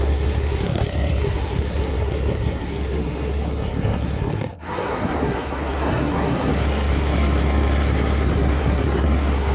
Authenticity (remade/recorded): remade